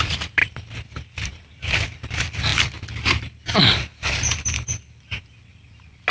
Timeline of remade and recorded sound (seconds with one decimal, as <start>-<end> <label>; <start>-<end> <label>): 0.0-6.1 recorded